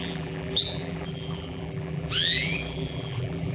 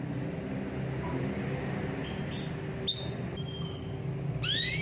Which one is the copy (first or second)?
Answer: first